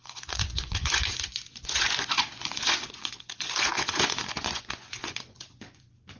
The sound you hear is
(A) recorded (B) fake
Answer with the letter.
B